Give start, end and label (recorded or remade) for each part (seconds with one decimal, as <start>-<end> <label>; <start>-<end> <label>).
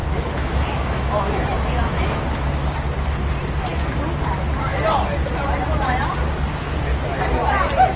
0.0-2.2 remade; 2.2-8.0 recorded